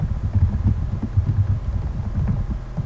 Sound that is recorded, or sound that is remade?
recorded